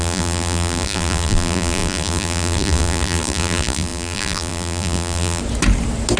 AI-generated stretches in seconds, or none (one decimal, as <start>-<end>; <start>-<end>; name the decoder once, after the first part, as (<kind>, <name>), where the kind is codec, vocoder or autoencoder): 0.0-5.4 (vocoder, BigVGAN v2)